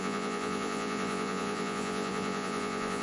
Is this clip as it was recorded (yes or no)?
no